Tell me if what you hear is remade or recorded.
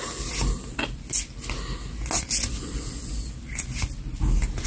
recorded